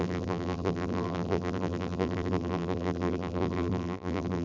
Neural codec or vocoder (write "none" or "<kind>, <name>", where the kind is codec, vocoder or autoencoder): vocoder, BigVGAN v2